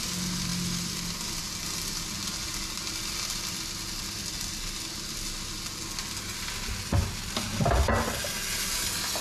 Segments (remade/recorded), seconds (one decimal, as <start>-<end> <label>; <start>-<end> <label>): 0.0-9.2 recorded